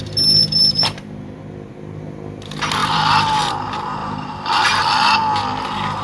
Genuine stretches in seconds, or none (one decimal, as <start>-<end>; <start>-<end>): 0.0-0.4; 1.4-2.8; 3.5-4.0; 4.8-6.0